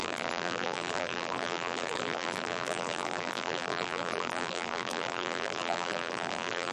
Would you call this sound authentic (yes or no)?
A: no